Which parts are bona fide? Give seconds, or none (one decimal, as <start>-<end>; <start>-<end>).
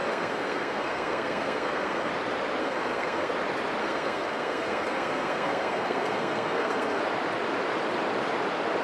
2.1-2.6; 3.3-3.8; 7.0-8.8